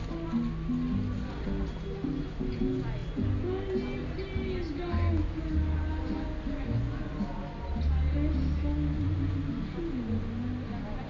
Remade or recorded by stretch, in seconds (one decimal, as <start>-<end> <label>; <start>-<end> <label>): 0.0-11.1 recorded